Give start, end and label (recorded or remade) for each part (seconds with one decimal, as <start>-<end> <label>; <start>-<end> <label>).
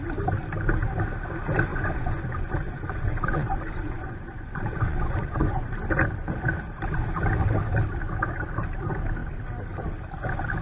0.0-1.7 recorded; 1.7-5.7 remade; 5.7-10.6 recorded